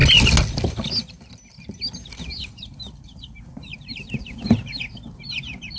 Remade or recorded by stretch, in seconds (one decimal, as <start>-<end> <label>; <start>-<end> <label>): 0.0-2.4 recorded; 2.4-5.8 remade